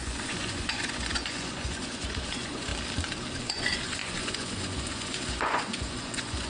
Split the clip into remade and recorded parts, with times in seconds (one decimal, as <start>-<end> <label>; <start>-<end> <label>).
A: 0.0-2.7 remade; 2.7-3.5 recorded; 3.5-6.5 remade